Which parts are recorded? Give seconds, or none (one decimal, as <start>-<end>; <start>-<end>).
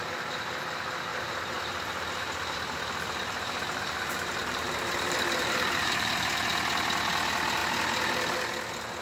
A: 0.0-1.1; 6.1-9.0